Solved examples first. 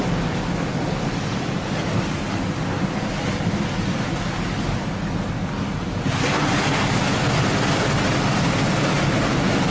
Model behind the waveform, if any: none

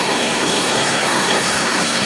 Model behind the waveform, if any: codec, SNAC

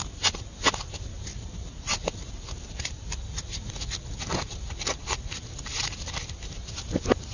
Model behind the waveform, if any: none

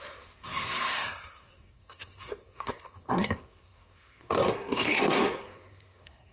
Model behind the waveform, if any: codec, SNAC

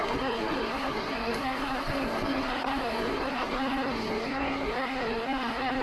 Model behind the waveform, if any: codec, SNAC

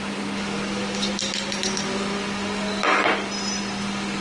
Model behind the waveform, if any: none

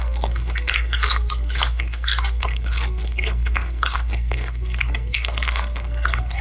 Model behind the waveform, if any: codec, SNAC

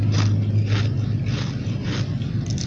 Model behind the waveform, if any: none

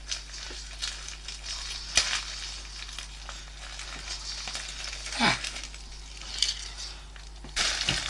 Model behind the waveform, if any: none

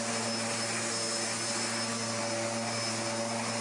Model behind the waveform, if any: none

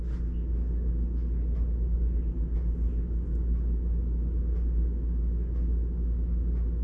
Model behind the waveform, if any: none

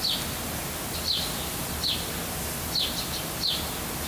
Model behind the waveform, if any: none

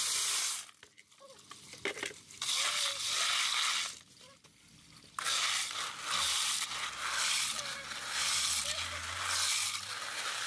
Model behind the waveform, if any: none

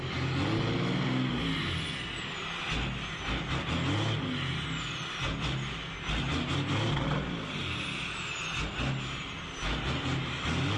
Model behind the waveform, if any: none